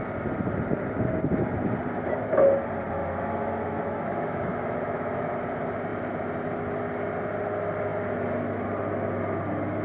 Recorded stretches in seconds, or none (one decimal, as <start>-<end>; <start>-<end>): 0.0-3.0; 5.3-9.8